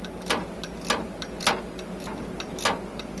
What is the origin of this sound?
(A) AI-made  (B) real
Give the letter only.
B